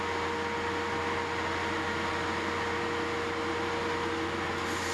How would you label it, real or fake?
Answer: real